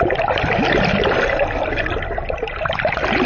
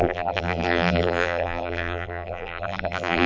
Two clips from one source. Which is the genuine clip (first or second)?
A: first